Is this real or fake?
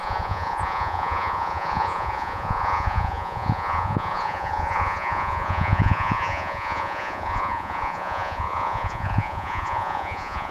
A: fake